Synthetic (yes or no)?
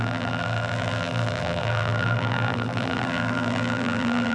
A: yes